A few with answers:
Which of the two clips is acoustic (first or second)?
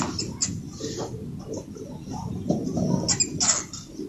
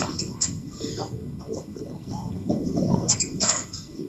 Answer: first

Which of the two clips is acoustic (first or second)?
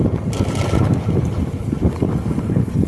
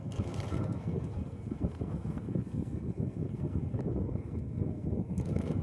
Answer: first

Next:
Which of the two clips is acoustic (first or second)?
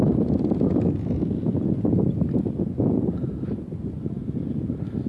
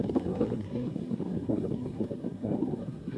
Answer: first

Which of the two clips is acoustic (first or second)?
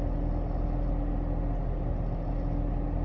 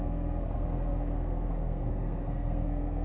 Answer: first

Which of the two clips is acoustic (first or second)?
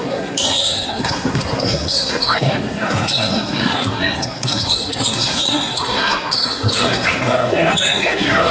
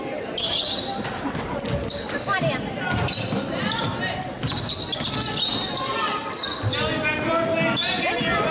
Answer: second